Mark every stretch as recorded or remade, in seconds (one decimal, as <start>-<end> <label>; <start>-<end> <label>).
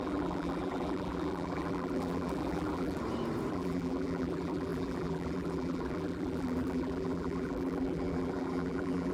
0.0-3.0 remade; 3.0-3.5 recorded; 3.5-9.1 remade